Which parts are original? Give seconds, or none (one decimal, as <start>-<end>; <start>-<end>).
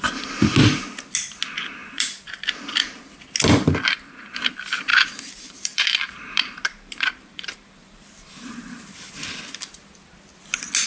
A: 0.0-1.8; 2.3-4.9; 9.4-10.9